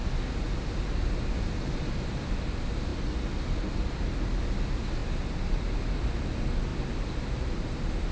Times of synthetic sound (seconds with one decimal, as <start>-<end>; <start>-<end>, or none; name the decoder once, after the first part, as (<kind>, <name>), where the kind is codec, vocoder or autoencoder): none